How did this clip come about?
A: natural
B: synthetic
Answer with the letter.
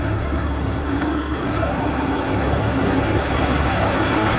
B